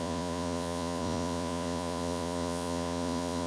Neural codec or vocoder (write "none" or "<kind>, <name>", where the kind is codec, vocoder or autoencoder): vocoder, Vocos